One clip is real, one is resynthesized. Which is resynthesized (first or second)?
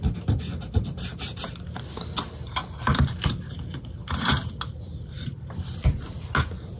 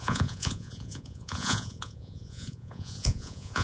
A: second